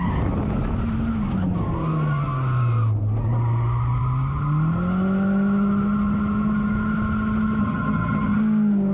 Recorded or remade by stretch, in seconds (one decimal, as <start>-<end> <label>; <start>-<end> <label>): 0.0-7.6 recorded; 7.6-8.4 remade; 8.4-8.9 recorded